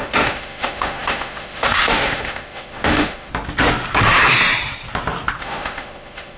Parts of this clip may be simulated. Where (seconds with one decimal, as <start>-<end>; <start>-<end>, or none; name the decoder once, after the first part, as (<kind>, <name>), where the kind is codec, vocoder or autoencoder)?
0.0-3.3 (autoencoder, DAC-VAE); 5.4-6.4